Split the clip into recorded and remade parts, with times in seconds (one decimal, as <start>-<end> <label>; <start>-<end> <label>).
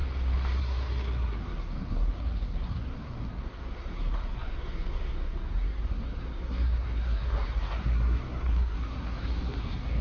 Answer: 0.0-0.6 recorded; 0.6-10.0 remade